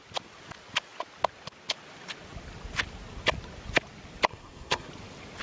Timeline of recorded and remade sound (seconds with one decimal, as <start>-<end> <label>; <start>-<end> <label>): 0.0-4.3 recorded; 4.3-4.9 remade; 4.9-5.4 recorded